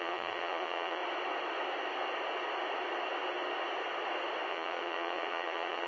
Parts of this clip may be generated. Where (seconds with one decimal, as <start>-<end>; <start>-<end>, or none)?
0.0-1.0; 4.5-5.9